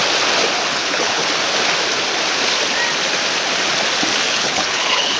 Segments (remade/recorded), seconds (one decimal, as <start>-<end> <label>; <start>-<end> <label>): 0.0-0.7 recorded; 0.7-1.2 remade; 1.2-4.3 recorded; 4.3-5.2 remade